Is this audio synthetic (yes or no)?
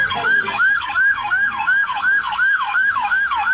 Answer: yes